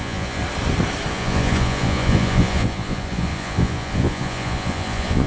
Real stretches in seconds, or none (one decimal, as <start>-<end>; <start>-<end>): 0.4-1.1